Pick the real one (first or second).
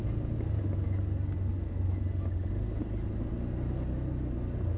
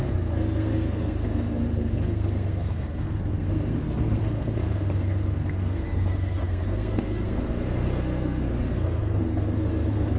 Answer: first